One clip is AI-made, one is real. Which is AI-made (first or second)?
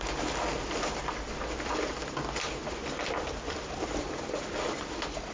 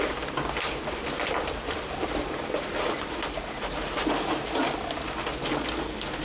second